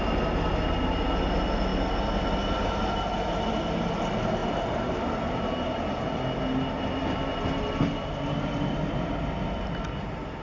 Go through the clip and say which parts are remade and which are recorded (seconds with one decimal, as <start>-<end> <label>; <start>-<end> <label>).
0.0-10.4 recorded